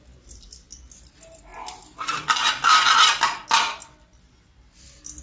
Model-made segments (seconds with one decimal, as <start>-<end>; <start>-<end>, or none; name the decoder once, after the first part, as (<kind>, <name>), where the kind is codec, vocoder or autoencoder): none